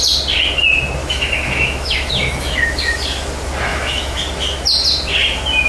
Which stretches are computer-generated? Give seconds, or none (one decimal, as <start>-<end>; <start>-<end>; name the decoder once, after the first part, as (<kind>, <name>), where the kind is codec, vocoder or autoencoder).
1.0-2.8 (autoencoder, DAC-VAE); 3.7-4.2